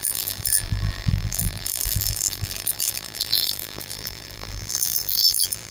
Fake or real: fake